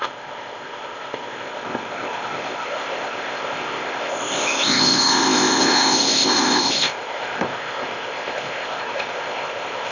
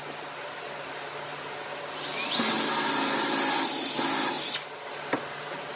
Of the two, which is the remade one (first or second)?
first